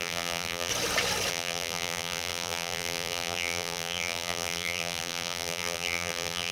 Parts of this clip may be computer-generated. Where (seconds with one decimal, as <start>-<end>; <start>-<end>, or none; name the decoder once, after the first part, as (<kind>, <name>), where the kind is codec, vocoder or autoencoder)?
0.0-0.7 (vocoder, BigVGAN v2); 1.3-6.5